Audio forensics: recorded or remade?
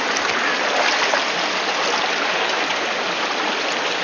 recorded